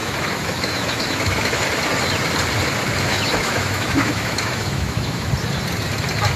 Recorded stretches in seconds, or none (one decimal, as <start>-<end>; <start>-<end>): 1.6-3.1; 5.3-6.4